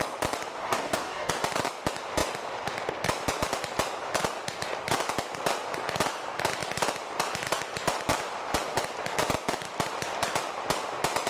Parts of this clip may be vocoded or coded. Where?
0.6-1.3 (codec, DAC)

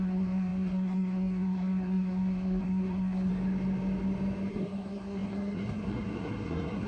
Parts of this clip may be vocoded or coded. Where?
0.0-3.3 (codec, SNAC); 4.5-6.9